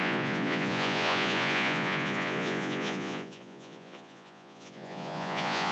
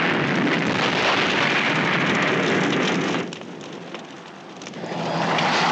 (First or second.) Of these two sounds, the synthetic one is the first